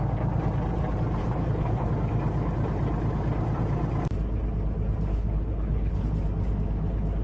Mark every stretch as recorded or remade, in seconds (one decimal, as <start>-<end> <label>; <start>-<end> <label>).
0.0-1.2 recorded; 1.2-1.9 remade; 1.9-5.1 recorded; 5.1-6.1 remade; 6.1-7.2 recorded